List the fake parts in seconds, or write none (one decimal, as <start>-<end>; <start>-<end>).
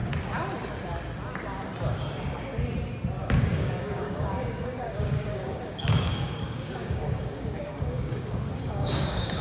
3.4-9.4